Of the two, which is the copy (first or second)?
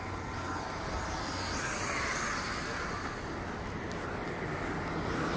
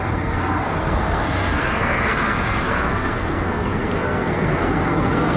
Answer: second